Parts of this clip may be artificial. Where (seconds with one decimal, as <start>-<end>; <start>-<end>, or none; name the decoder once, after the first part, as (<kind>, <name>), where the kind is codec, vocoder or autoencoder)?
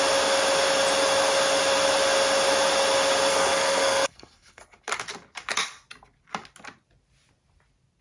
3.3-4.6 (codec, SNAC)